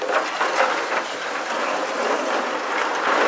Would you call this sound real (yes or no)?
yes